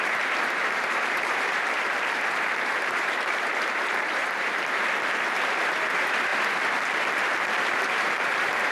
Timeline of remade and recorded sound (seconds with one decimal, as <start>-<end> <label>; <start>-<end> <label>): 0.0-6.3 remade; 6.3-7.1 recorded; 7.1-8.7 remade